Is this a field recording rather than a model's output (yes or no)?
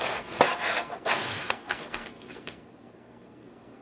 no